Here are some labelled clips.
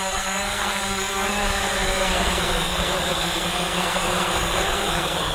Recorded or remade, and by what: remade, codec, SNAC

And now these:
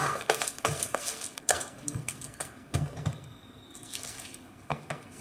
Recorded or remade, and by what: remade, codec, SNAC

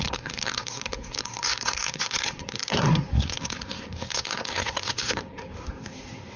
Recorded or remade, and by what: remade, codec, SNAC